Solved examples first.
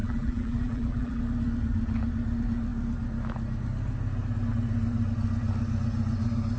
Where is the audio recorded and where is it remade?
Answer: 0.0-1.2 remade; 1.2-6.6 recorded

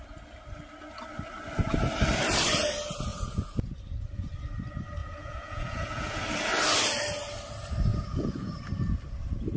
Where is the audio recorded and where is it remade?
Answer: 0.0-3.1 recorded; 3.1-3.7 remade; 3.7-5.0 recorded; 5.0-6.2 remade; 6.2-7.9 recorded; 7.9-8.5 remade; 8.5-9.6 recorded

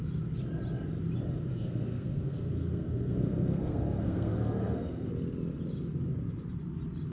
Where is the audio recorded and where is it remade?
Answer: 0.0-1.5 recorded; 1.5-5.1 remade; 5.1-7.1 recorded